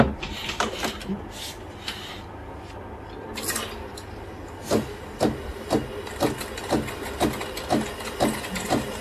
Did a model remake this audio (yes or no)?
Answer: no